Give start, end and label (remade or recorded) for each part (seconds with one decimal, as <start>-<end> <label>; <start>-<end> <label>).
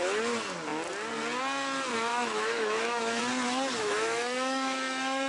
0.0-2.1 recorded; 2.1-3.2 remade; 3.2-3.8 recorded; 3.8-5.3 remade